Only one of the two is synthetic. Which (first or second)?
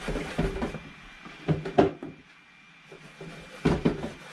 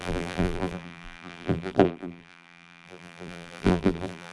second